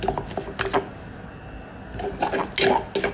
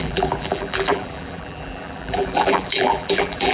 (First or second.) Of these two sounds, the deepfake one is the second